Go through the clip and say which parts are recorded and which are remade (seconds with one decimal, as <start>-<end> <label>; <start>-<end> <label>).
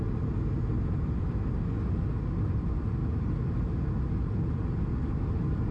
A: 0.0-3.0 recorded; 3.0-3.7 remade; 3.7-5.7 recorded